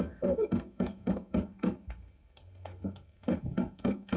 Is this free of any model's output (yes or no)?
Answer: no